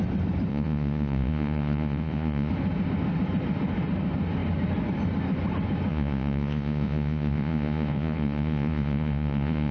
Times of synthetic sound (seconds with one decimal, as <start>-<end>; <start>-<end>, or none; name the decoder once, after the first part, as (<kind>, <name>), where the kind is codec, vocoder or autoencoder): 0.5-2.5 (vocoder, Vocos); 5.9-9.7